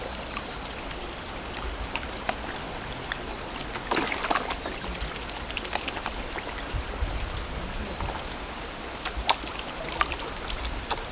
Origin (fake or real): real